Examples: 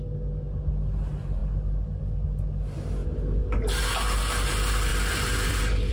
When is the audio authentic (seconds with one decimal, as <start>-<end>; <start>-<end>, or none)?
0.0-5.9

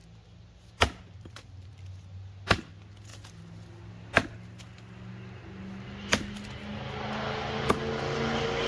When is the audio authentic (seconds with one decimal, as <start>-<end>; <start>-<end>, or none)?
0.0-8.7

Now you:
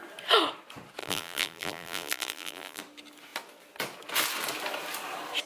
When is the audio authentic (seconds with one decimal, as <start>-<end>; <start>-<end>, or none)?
0.0-1.0; 2.8-5.5

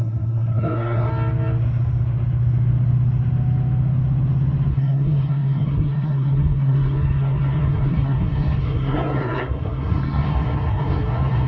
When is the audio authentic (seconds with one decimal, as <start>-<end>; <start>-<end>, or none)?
1.1-4.7

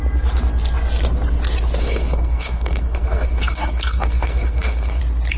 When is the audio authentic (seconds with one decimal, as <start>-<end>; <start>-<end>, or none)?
0.0-1.8; 5.0-5.4